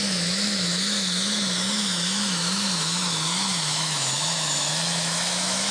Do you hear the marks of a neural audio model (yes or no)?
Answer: yes